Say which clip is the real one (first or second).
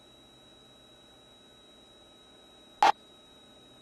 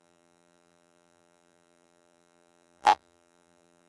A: first